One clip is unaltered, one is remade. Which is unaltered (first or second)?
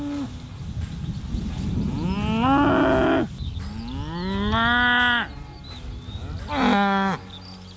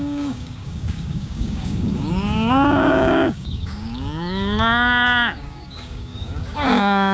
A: first